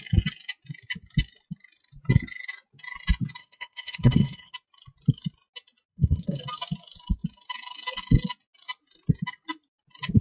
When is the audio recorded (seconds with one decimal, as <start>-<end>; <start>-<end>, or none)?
0.0-3.4; 4.5-5.9; 6.4-10.2